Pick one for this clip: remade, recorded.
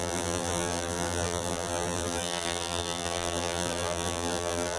remade